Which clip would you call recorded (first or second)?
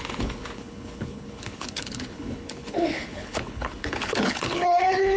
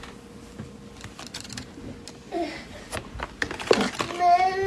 second